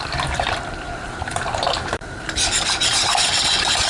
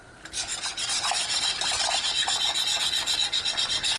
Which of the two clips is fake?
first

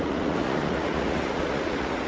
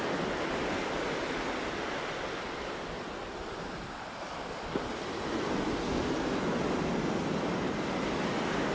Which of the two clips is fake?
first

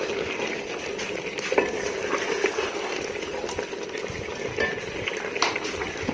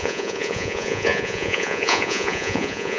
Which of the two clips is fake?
second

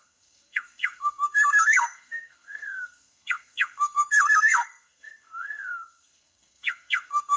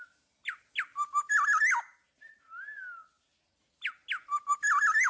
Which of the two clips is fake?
first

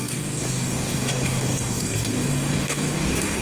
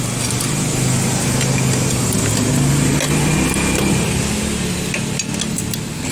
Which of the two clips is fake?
first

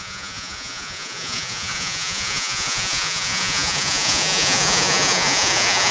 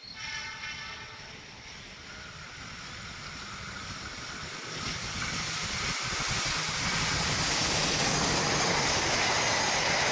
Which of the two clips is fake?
first